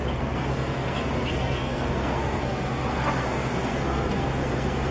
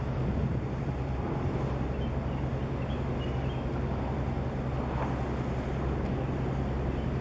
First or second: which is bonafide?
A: second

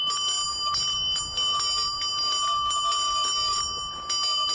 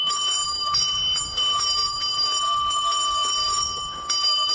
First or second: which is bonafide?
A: first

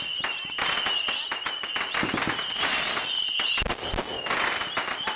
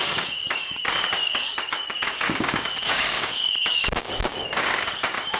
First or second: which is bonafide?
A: first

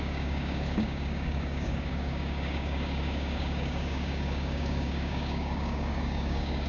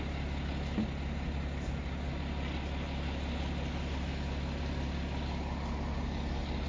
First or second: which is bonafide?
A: second